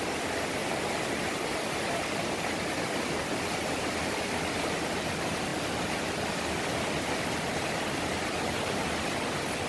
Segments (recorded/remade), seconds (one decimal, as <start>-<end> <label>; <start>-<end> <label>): 0.0-9.7 recorded